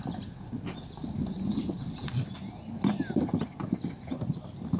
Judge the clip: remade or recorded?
recorded